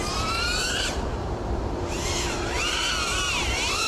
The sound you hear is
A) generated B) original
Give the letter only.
A